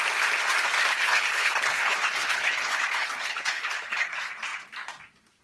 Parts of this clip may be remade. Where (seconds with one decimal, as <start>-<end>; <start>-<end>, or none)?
0.9-4.1